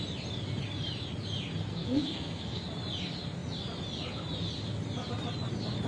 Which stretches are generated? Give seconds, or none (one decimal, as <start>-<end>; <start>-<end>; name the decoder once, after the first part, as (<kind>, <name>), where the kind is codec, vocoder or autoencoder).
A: 1.7-2.6 (codec, SNAC)